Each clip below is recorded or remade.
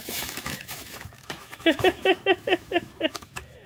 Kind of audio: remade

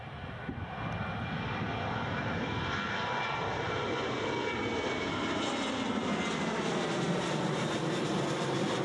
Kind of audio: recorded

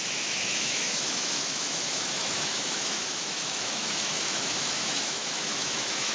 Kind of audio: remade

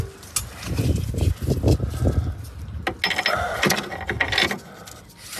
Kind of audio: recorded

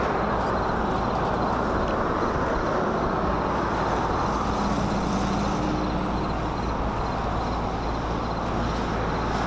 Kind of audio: recorded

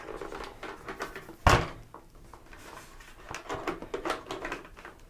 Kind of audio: recorded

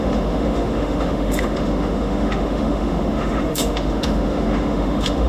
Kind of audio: remade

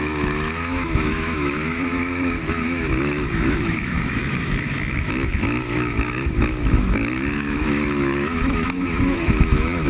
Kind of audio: remade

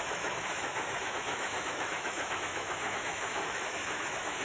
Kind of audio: remade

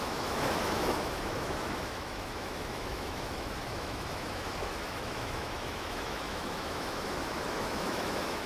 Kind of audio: remade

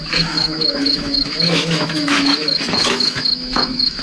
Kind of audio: remade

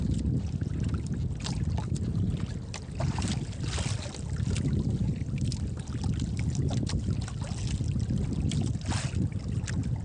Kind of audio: recorded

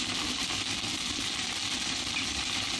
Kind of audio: recorded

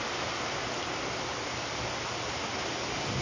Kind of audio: recorded